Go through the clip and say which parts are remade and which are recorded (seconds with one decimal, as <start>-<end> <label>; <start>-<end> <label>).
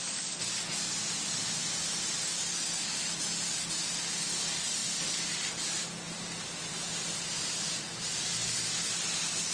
0.0-9.5 recorded